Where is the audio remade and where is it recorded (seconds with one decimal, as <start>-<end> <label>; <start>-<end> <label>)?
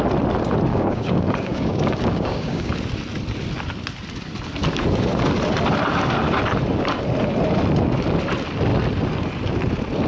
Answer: 0.0-0.7 recorded; 0.7-2.7 remade; 2.7-10.1 recorded